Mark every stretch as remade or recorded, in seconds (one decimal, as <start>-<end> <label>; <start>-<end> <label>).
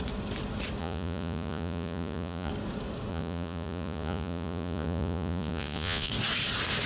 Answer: 0.0-0.8 recorded; 0.8-2.5 remade; 2.5-3.1 recorded; 3.1-6.1 remade; 6.1-6.9 recorded